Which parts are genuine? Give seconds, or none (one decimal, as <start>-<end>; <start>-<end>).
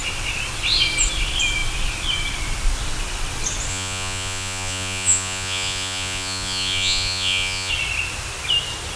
0.0-3.7; 7.7-9.0